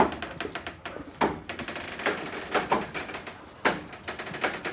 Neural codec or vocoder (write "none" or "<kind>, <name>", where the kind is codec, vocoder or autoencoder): none